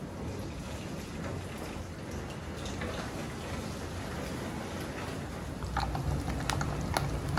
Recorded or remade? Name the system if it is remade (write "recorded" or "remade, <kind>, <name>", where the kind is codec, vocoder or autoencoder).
recorded